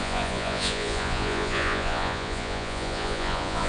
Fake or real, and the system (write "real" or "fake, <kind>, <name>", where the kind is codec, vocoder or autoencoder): fake, vocoder, Vocos